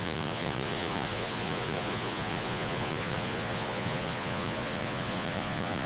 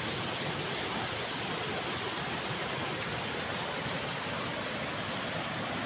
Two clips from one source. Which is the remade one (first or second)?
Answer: first